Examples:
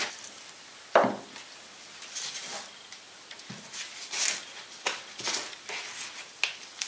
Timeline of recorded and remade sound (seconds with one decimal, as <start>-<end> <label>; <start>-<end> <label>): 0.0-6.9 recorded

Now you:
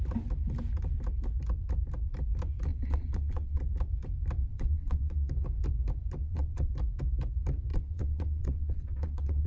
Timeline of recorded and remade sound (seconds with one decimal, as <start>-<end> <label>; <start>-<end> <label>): 0.0-2.7 recorded; 2.7-3.6 remade; 3.6-4.4 recorded; 4.4-5.3 remade; 5.3-6.2 recorded; 6.2-6.7 remade; 6.7-7.7 recorded; 7.7-9.5 remade

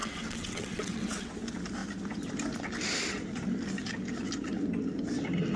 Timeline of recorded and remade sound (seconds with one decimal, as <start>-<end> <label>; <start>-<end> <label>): 0.0-1.3 remade; 1.3-5.6 recorded

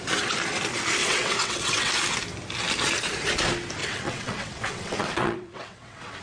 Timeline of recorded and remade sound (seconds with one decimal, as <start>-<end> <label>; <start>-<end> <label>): 0.0-1.0 recorded; 1.0-1.9 remade; 1.9-3.8 recorded; 3.8-6.2 remade

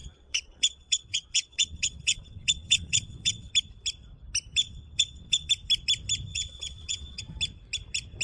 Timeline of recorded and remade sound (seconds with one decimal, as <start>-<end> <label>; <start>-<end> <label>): 0.0-3.5 remade; 3.5-4.6 recorded; 4.6-5.5 remade; 5.5-6.3 recorded; 6.3-7.2 remade; 7.2-8.2 recorded